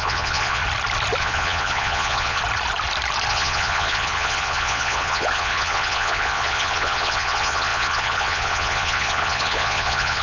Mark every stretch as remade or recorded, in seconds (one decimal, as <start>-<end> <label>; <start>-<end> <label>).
0.0-0.6 remade; 0.6-1.2 recorded; 1.2-2.4 remade; 2.4-3.3 recorded; 3.3-10.2 remade

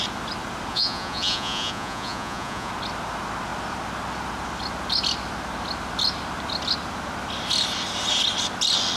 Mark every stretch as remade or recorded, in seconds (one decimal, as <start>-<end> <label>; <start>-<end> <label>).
0.0-0.7 recorded; 0.7-2.7 remade; 2.7-9.0 recorded

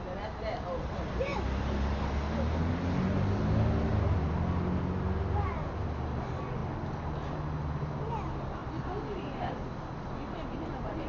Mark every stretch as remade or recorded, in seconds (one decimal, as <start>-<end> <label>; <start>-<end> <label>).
0.0-11.1 recorded

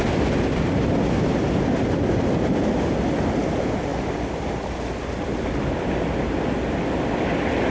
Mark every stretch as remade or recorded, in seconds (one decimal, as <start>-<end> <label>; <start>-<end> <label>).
0.0-7.7 recorded

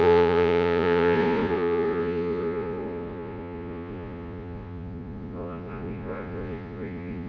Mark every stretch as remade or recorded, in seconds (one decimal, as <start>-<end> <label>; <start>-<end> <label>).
0.0-7.3 remade

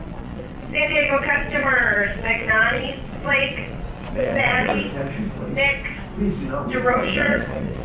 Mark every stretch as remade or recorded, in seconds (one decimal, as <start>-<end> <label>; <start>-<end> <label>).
0.0-4.7 remade; 4.7-6.9 recorded; 6.9-7.8 remade

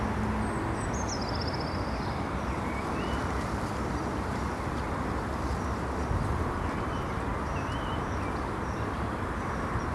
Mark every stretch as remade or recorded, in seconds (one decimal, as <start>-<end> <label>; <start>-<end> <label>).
0.0-9.9 recorded